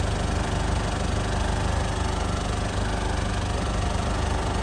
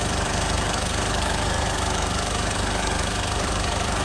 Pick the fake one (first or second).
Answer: second